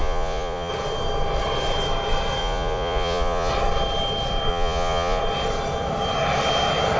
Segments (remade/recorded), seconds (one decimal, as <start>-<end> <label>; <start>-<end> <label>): 0.0-0.7 remade; 0.7-2.4 recorded; 2.4-3.5 remade; 3.5-4.5 recorded; 4.5-5.2 remade; 5.2-7.0 recorded